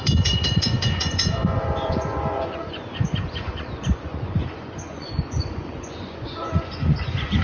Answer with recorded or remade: remade